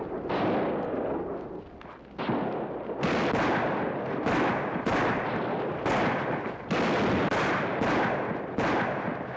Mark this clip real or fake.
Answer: real